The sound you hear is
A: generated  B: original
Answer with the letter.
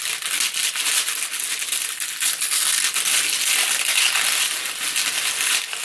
B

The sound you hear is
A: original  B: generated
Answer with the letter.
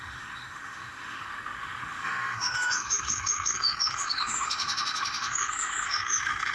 B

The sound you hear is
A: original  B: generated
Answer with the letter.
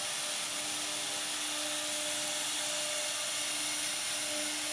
A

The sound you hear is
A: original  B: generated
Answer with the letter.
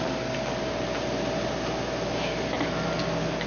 A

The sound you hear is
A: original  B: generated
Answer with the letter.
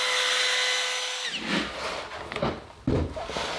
A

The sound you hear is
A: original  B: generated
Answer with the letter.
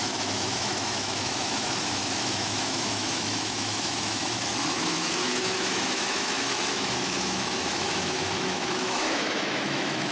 B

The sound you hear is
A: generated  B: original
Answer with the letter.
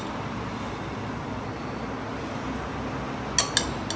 B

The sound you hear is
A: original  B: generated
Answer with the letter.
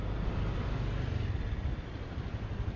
A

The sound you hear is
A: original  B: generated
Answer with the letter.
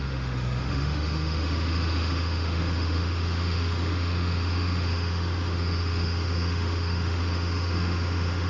B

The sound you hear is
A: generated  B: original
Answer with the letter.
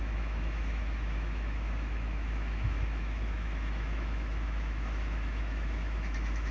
A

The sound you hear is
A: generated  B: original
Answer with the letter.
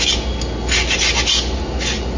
B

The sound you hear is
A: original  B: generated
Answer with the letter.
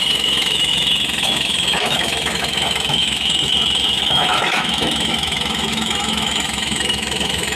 B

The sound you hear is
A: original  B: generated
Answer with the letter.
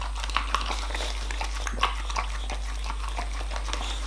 A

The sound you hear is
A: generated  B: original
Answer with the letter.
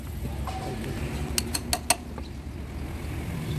B